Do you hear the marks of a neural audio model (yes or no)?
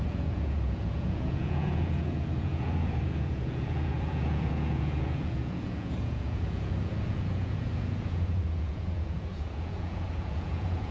yes